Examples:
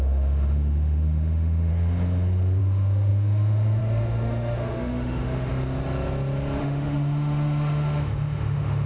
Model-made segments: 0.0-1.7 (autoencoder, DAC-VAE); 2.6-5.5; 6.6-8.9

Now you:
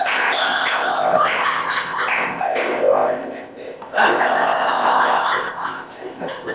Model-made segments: 0.0-6.5 (codec, ZipCodec)

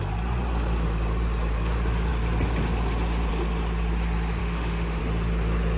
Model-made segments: 4.4-5.0 (autoencoder, DAC-VAE)

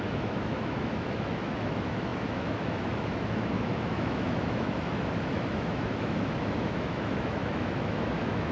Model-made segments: 0.0-8.5 (autoencoder, DAC-VAE)

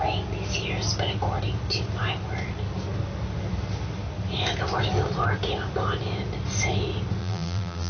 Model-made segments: 7.2-7.9 (vocoder, BigVGAN v2)

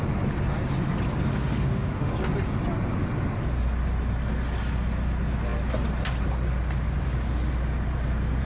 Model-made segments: 1.3-2.1 (autoencoder, DAC-VAE)